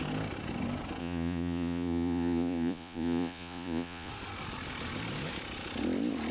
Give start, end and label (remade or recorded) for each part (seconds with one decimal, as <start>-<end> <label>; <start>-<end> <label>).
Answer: 0.0-1.0 recorded; 1.0-4.1 remade; 4.1-6.3 recorded